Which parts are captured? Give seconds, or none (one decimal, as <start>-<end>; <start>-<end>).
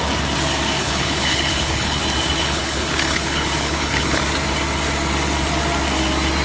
0.0-0.8; 2.0-2.4; 4.2-6.4